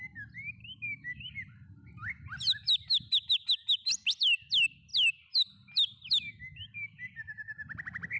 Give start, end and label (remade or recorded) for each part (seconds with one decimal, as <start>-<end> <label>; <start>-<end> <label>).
0.0-0.6 recorded; 0.6-1.3 remade; 1.3-8.2 recorded

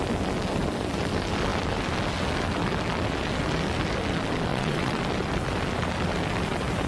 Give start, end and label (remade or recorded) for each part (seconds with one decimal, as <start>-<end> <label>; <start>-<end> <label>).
0.0-4.5 recorded; 4.5-5.0 remade; 5.0-6.9 recorded